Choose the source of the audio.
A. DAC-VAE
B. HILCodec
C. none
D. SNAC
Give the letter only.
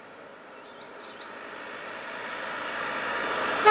C